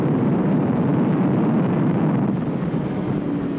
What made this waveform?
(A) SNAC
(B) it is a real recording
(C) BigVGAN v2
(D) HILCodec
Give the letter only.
B